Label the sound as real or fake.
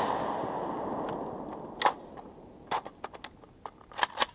real